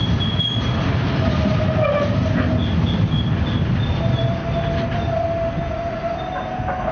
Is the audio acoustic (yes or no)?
yes